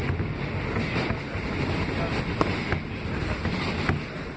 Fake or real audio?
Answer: real